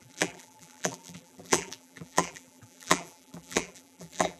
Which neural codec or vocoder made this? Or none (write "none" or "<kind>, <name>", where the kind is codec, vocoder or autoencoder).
vocoder, BigVGAN v2